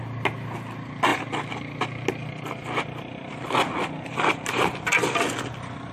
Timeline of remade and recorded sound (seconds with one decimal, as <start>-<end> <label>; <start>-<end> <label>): 0.0-5.9 recorded